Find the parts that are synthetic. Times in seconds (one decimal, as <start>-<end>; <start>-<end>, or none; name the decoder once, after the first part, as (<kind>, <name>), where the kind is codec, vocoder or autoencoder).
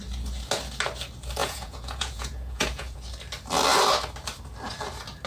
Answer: 1.4-3.0 (vocoder, Vocos)